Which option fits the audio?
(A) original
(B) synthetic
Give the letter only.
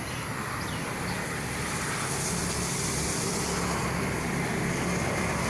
B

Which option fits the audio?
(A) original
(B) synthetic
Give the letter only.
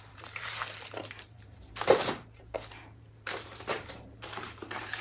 B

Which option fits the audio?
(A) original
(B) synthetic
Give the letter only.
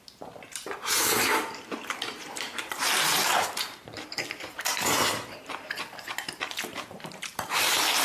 B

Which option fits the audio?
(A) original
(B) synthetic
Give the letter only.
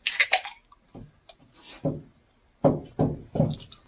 A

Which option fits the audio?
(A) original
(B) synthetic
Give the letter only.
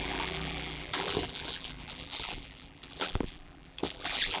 B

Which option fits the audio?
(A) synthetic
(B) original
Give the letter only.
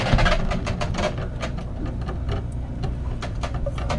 A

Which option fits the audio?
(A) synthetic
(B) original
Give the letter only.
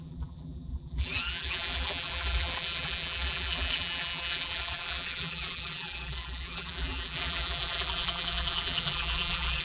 A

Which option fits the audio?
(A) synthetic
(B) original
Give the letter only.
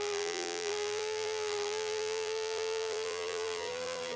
A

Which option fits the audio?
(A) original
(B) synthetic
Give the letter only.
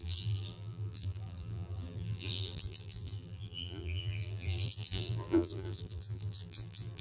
B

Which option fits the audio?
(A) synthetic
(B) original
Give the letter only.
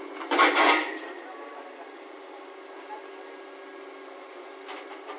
B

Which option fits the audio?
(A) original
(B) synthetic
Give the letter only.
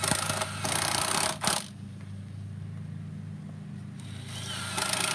A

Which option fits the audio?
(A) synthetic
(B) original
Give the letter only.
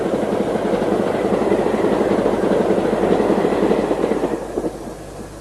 B